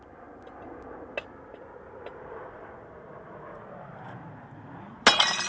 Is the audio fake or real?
real